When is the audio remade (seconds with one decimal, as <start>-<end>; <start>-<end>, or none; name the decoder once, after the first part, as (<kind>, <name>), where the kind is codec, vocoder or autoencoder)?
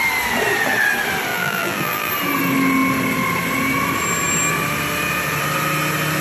1.3-2.1 (vocoder, BigVGAN v2)